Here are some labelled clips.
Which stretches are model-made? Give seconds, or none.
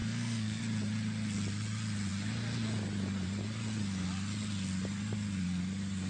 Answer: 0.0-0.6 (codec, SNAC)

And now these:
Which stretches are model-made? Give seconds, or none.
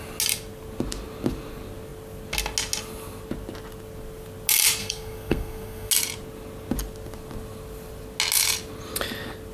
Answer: 4.8-5.9 (codec, SNAC)